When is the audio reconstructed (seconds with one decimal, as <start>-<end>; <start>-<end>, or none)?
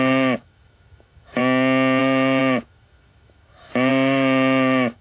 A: 0.0-1.4; 2.0-5.0